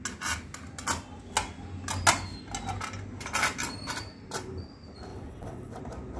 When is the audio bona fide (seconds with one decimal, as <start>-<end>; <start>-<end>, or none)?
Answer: 0.0-5.1; 5.8-6.2